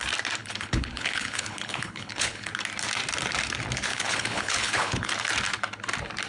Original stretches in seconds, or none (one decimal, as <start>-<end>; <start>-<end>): 0.0-0.4; 2.5-3.9; 5.1-6.3